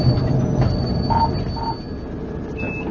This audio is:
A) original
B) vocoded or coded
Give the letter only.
A